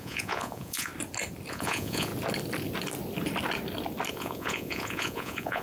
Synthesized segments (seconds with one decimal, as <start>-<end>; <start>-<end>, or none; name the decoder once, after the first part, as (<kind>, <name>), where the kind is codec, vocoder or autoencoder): 0.0-0.9 (vocoder, Vocos); 1.5-2.1; 4.1-5.6